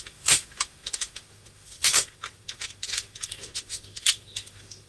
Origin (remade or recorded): remade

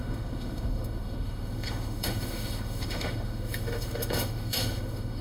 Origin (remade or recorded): remade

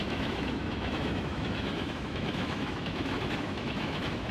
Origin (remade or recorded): remade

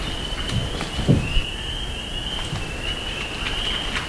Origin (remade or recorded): recorded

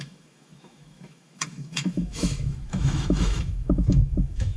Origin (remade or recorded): remade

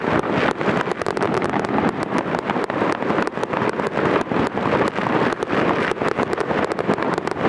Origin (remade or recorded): recorded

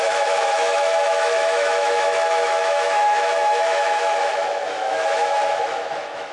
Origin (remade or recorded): remade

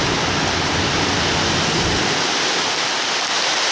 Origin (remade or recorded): recorded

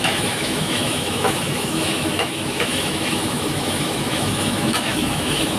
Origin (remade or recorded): remade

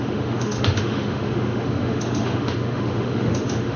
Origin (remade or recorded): remade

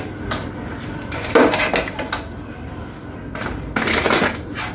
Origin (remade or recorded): recorded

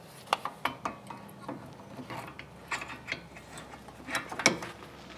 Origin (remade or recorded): recorded